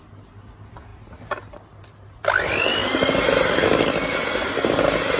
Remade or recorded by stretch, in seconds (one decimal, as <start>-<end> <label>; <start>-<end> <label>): 0.0-5.2 recorded